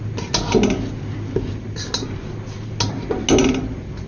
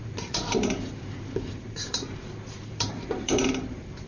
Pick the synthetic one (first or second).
second